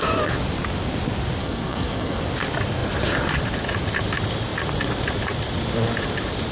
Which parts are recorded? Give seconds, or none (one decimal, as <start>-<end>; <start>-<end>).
0.0-1.4; 2.2-6.5